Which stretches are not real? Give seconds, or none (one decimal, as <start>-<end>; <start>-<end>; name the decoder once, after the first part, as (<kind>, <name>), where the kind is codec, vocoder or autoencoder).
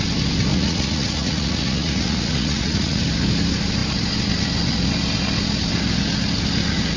0.5-3.0 (vocoder, Vocos)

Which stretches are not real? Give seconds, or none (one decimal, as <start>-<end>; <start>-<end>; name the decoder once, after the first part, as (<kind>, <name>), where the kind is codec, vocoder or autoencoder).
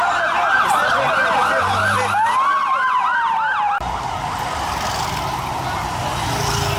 none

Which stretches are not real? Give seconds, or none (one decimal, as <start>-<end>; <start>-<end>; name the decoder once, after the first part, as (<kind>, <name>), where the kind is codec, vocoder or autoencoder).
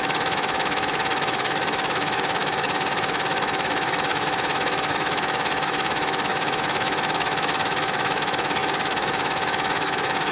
0.0-10.3 (autoencoder, DAC-VAE)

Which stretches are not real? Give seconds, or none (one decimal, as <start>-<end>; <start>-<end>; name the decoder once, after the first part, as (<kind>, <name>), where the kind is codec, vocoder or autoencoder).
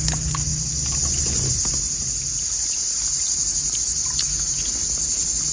none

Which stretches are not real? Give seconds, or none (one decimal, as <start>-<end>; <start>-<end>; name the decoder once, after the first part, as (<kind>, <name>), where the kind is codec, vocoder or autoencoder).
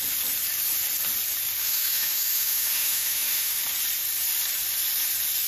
1.6-3.6 (autoencoder, DAC-VAE)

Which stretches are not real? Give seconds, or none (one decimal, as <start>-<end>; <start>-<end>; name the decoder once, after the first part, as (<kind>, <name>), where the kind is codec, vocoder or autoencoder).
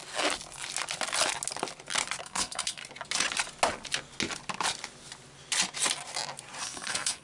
2.2-2.8 (codec, SNAC); 6.6-7.2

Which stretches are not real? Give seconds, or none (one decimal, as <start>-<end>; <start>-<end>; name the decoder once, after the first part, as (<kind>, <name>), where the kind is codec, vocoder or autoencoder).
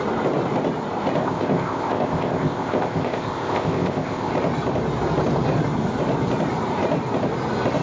1.2-4.3 (codec, ZipCodec)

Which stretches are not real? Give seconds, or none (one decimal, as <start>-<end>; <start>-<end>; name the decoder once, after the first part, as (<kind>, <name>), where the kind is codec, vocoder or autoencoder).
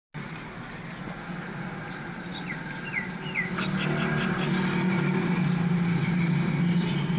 none